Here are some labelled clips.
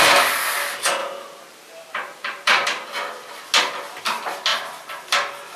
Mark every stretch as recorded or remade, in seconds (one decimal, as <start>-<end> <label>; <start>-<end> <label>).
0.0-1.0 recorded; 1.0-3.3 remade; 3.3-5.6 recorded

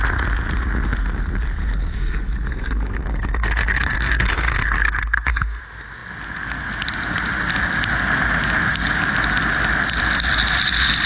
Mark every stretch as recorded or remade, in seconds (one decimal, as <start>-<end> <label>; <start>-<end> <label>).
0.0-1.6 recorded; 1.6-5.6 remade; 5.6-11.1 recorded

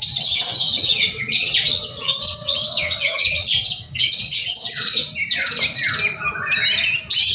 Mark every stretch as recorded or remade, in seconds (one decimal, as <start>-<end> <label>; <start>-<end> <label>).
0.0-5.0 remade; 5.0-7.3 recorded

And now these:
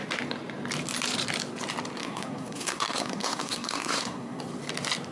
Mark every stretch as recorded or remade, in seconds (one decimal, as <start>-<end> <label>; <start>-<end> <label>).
0.0-2.0 recorded; 2.0-4.4 remade; 4.4-5.1 recorded

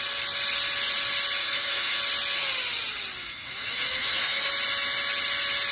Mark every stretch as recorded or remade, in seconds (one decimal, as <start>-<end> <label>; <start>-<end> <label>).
0.0-1.4 recorded; 1.4-2.0 remade; 2.0-3.2 recorded; 3.2-4.5 remade; 4.5-5.7 recorded

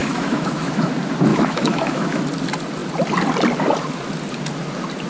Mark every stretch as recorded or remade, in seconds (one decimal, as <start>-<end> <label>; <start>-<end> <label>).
0.0-0.9 remade; 0.9-1.3 recorded; 1.3-2.2 remade; 2.2-5.1 recorded

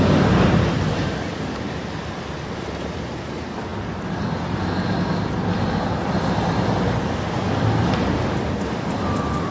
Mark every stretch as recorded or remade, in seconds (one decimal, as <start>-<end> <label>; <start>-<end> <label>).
0.0-9.5 recorded